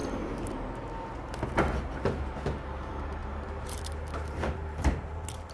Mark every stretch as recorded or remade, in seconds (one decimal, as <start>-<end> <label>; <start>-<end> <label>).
0.0-0.7 remade; 0.7-3.2 recorded; 3.2-5.1 remade; 5.1-5.5 recorded